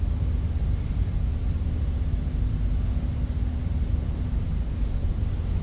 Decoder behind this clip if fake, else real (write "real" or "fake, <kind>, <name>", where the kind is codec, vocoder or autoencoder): real